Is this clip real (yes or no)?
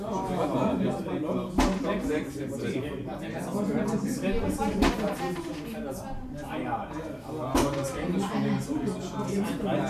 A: yes